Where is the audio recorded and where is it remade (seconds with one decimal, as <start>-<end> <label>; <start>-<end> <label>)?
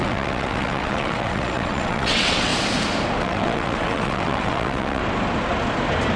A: 0.0-2.5 remade; 2.5-3.2 recorded; 3.2-5.0 remade; 5.0-6.2 recorded